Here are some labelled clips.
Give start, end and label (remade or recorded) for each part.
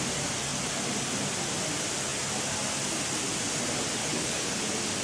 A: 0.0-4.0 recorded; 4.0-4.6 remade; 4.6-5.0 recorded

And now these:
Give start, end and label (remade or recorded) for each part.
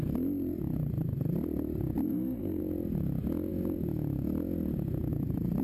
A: 0.0-2.1 recorded; 2.1-2.6 remade; 2.6-5.6 recorded